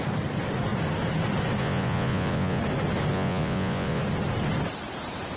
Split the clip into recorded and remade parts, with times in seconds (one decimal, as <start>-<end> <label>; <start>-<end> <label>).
0.0-1.6 recorded; 1.6-2.6 remade; 2.6-3.1 recorded; 3.1-4.0 remade; 4.0-5.4 recorded